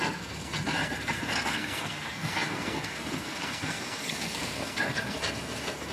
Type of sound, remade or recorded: remade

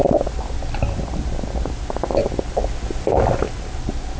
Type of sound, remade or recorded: recorded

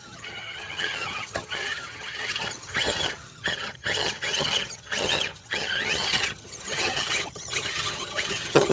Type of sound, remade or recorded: remade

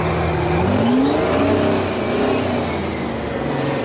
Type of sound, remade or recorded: recorded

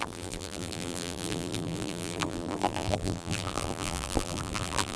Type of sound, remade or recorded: remade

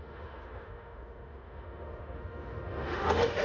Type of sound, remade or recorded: remade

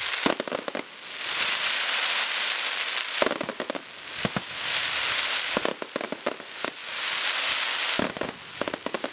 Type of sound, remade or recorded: recorded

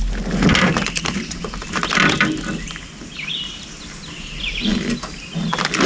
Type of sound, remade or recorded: recorded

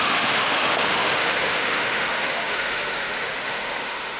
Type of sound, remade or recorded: remade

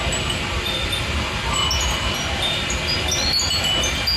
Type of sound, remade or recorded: recorded